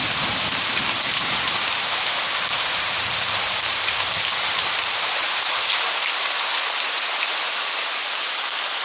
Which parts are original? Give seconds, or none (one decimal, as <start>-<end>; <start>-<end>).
6.5-8.8